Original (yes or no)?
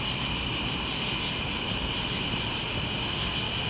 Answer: yes